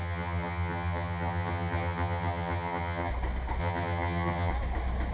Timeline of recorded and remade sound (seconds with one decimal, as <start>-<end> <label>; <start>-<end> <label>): 0.0-3.1 remade; 3.1-3.6 recorded; 3.6-4.5 remade; 4.5-5.1 recorded